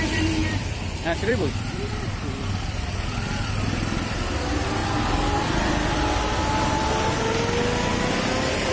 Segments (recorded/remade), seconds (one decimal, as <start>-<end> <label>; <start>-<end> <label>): 0.0-0.4 recorded; 0.4-2.6 remade; 2.6-8.7 recorded